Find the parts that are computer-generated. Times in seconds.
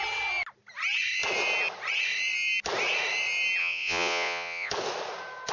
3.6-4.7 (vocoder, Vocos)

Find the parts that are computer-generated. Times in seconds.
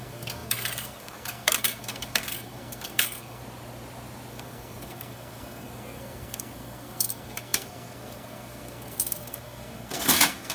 0.0-3.4 (codec, SNAC); 4.3-10.5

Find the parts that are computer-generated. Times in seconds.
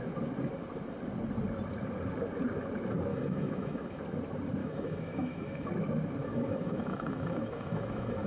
3.1-4.0 (autoencoder, DAC-VAE); 4.6-5.7; 6.2-8.3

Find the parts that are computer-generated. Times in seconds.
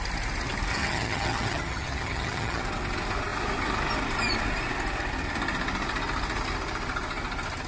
0.7-2.6 (vocoder, HiFi-GAN)